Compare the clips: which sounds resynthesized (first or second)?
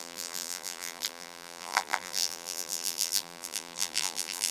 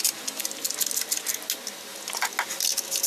first